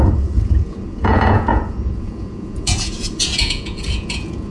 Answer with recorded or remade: remade